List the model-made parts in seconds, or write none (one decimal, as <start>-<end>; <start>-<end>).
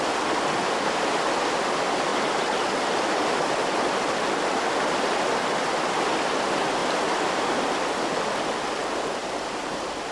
none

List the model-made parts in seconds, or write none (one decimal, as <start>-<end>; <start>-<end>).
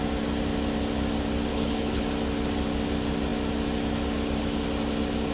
1.5-2.0